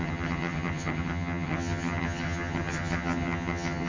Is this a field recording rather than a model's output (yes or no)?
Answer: no